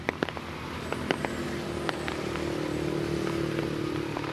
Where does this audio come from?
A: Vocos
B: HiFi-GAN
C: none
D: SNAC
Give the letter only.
C